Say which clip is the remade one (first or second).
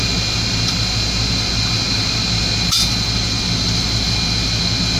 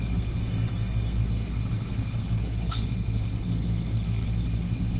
second